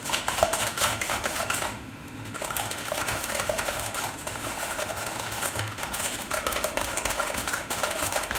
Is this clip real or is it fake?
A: fake